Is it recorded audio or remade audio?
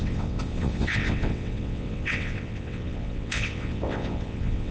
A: remade